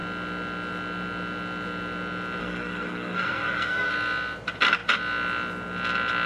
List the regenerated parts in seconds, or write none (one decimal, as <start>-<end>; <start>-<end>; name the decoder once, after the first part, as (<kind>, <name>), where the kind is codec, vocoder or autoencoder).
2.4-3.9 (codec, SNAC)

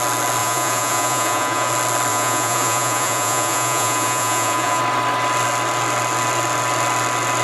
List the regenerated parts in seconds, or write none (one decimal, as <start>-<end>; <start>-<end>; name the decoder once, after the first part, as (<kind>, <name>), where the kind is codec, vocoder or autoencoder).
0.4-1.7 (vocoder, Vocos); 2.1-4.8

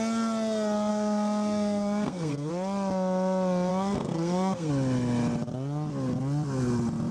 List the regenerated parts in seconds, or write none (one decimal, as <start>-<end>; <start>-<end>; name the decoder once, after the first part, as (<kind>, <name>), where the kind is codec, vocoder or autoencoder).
0.9-2.5 (codec, SNAC); 3.7-4.7